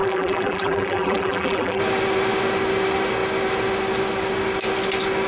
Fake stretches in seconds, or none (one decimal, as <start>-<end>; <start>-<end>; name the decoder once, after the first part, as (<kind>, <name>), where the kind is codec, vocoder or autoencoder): 0.0-1.8 (vocoder, BigVGAN v2)

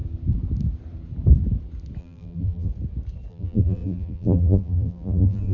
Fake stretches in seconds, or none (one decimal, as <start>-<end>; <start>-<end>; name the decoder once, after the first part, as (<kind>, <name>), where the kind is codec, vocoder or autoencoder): 2.0-2.7 (vocoder, BigVGAN v2); 3.3-5.5

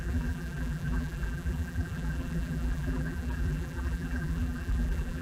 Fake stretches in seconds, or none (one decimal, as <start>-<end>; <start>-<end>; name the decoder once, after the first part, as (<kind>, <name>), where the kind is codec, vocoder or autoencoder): 0.0-5.2 (vocoder, BigVGAN v2)

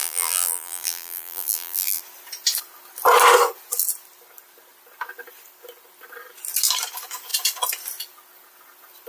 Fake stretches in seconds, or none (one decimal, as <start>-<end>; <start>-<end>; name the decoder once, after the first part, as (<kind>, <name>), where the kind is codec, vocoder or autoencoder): 0.0-2.0 (vocoder, BigVGAN v2)